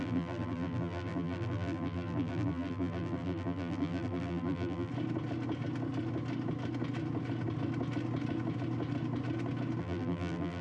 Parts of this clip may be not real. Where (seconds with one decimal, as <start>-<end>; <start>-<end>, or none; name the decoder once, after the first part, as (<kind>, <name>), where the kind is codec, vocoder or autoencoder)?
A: 0.0-4.9 (vocoder, BigVGAN v2); 9.8-10.6